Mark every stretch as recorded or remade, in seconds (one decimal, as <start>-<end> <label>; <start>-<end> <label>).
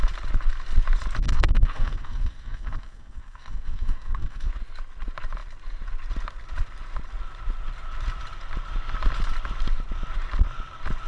0.0-1.2 recorded; 1.2-4.5 remade; 4.5-11.1 recorded